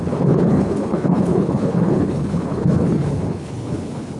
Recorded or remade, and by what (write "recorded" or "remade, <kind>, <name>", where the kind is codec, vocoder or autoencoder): remade, codec, HILCodec